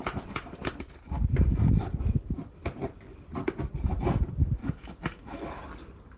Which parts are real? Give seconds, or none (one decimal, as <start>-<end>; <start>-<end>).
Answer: 0.0-4.6; 5.6-6.2